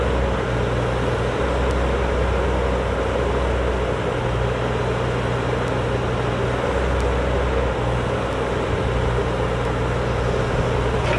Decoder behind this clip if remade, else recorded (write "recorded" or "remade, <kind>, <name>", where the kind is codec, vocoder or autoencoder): recorded